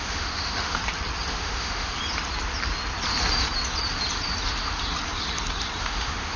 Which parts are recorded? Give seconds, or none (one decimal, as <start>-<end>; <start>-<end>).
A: 0.8-1.3; 2.0-5.8